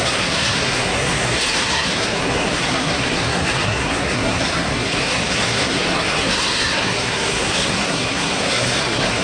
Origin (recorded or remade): remade